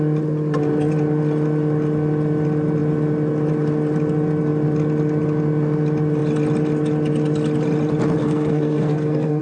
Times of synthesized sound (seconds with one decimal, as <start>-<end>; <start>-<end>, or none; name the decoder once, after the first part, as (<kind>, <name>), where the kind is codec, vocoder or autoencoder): 8.2-9.4 (codec, SNAC)